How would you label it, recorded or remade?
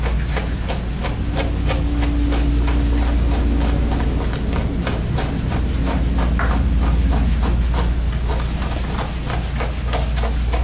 recorded